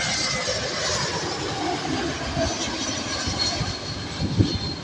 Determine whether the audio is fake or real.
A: real